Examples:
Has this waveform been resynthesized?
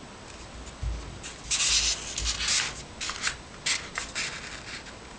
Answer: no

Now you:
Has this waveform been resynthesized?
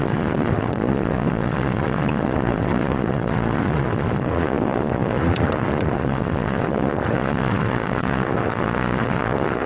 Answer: yes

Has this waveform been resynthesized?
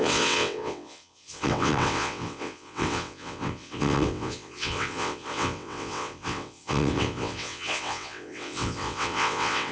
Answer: yes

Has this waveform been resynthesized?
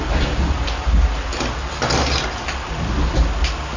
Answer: no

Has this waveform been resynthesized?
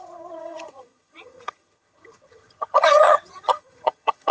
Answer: yes